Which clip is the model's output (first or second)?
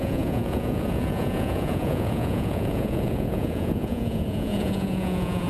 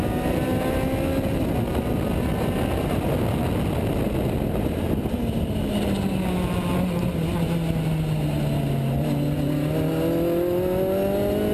first